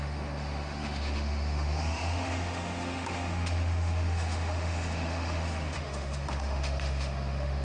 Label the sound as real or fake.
fake